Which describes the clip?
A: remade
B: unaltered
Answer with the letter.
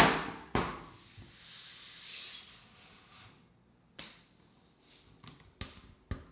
B